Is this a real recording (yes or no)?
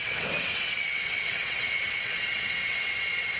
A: no